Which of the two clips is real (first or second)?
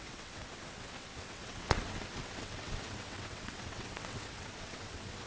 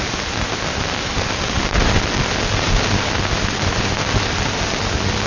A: second